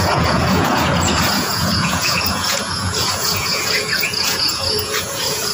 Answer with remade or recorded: remade